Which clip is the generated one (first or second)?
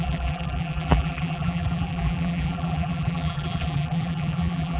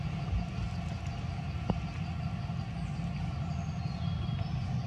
first